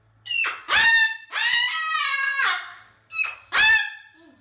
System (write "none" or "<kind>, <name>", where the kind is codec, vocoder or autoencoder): none